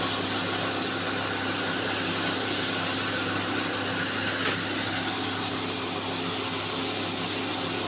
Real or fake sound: real